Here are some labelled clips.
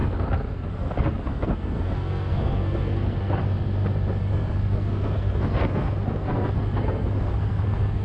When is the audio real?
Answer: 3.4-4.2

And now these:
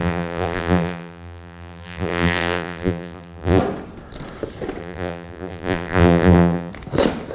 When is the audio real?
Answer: 3.6-4.8; 6.7-7.3

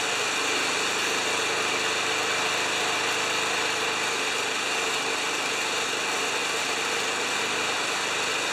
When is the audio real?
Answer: 0.0-8.5